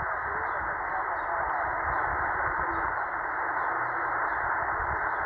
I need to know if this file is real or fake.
real